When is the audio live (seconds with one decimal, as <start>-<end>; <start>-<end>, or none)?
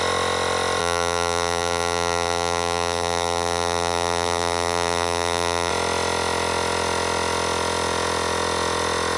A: 0.0-0.8; 5.7-9.2